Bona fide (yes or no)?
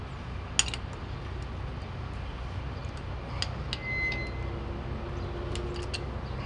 yes